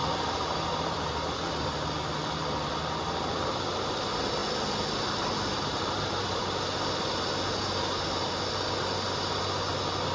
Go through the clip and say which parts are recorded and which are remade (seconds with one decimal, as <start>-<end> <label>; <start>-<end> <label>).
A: 0.0-10.1 recorded